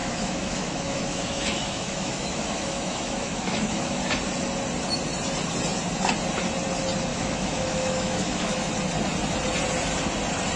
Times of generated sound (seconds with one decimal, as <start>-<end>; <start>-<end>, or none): 0.0-4.0; 7.1-8.7

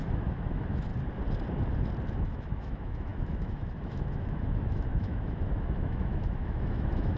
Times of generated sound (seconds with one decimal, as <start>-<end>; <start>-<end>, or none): 0.0-0.9; 2.1-7.2